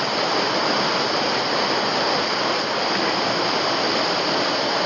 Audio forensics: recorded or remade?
recorded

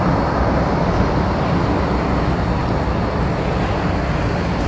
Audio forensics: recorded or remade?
recorded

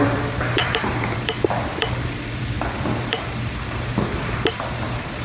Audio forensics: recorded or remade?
remade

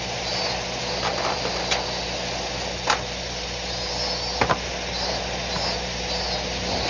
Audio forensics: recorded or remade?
recorded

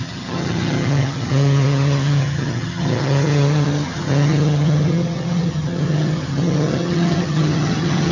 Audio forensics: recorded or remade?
remade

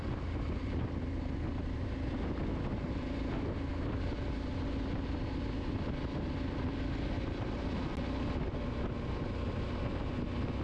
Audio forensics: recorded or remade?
recorded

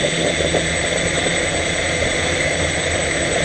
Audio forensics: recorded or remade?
remade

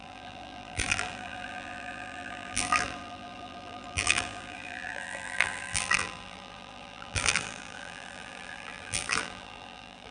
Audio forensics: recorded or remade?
remade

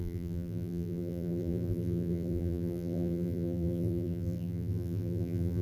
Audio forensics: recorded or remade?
remade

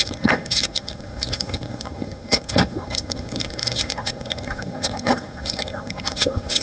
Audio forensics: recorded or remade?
remade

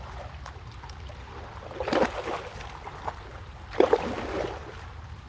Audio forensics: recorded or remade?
recorded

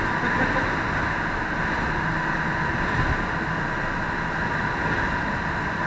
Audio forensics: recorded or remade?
recorded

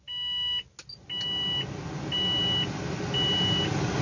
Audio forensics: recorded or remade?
recorded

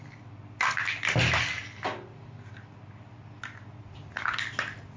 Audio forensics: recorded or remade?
recorded